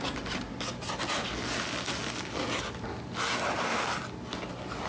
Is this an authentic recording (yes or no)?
yes